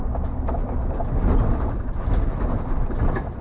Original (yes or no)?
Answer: yes